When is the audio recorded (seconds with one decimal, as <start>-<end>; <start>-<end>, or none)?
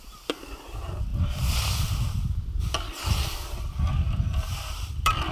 0.0-3.9